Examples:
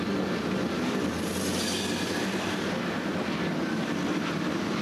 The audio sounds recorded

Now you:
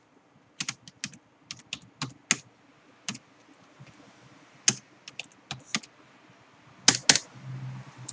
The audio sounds recorded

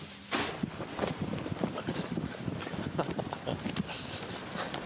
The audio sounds remade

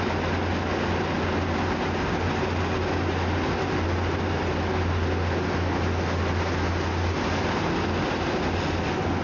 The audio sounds recorded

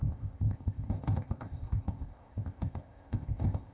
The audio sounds remade